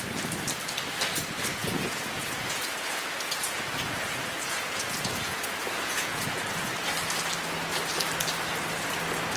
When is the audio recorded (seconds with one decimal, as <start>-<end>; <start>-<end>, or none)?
0.0-1.5; 6.4-9.4